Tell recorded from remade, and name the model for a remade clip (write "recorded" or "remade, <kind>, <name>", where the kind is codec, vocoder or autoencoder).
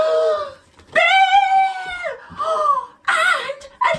recorded